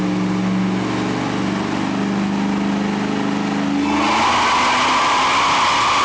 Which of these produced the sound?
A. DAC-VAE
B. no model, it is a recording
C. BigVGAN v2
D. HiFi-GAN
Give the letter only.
B